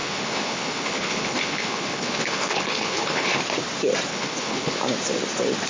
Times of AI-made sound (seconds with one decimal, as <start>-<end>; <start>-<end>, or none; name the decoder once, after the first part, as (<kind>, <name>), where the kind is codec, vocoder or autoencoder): 0.0-3.4 (codec, HILCodec); 4.1-4.8